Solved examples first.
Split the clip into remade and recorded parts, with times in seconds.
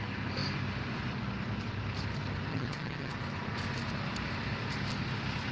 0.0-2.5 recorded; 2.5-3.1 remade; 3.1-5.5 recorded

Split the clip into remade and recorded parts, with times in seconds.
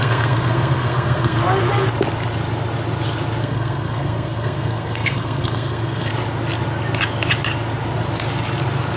0.0-1.4 remade; 1.4-3.4 recorded; 3.4-6.1 remade; 6.1-9.0 recorded